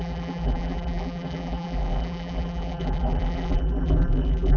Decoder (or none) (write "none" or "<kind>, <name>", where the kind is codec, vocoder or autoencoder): vocoder, BigVGAN v2